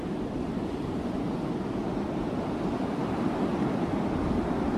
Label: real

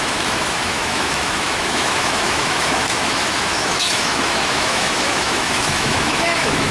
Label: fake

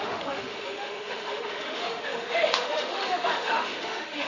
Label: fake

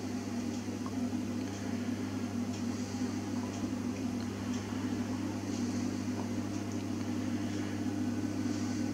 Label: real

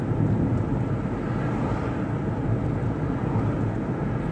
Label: real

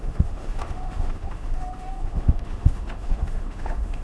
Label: fake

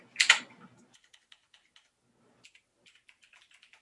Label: real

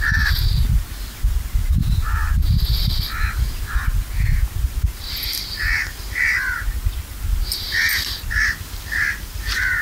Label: real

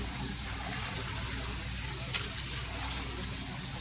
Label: real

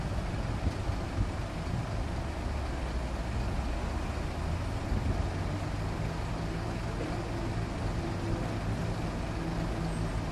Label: real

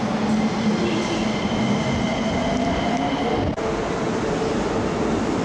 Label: real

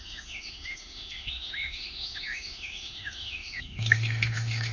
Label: fake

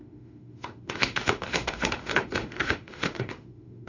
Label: fake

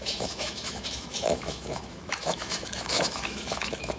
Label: fake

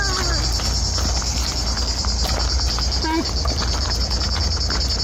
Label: real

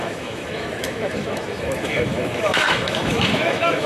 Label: fake